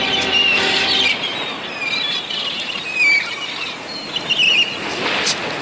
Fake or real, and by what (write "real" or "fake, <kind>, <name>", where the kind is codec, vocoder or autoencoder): real